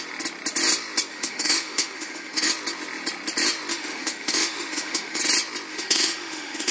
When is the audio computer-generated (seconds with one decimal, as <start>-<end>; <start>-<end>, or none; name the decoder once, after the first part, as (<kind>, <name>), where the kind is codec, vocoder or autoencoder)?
1.1-2.5 (autoencoder, DAC-VAE); 3.7-5.2; 5.7-6.7

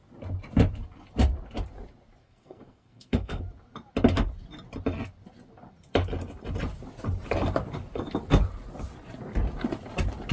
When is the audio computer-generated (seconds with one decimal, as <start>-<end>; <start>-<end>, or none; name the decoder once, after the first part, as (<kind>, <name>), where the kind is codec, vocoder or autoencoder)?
2.2-3.4 (codec, SNAC)

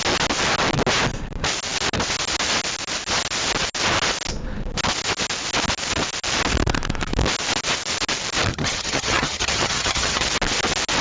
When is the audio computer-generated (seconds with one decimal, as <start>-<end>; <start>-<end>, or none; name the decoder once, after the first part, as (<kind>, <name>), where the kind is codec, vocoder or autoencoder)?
8.5-10.3 (vocoder, HiFi-GAN)

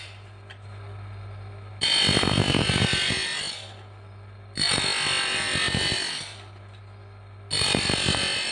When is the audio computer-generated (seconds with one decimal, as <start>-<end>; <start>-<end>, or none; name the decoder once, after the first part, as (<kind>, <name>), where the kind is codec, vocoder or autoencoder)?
none

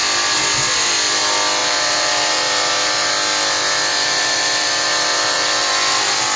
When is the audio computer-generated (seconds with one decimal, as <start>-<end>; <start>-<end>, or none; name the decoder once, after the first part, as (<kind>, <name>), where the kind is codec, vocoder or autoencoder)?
1.6-3.1 (vocoder, BigVGAN v2); 3.9-5.7

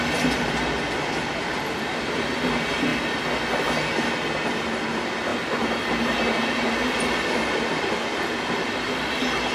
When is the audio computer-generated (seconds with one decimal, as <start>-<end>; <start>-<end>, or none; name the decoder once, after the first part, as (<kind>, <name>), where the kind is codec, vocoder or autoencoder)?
none